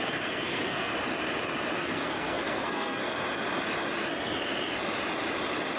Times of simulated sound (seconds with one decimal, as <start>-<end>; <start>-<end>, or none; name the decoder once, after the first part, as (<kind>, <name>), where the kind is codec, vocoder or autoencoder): 0.0-0.9 (codec, SNAC); 1.8-3.0